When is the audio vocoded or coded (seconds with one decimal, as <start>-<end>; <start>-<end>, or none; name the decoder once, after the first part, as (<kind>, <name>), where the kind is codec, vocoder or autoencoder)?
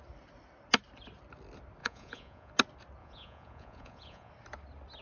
1.8-2.5 (vocoder, Vocos); 3.0-4.3